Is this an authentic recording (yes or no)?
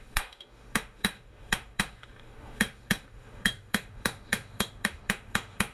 no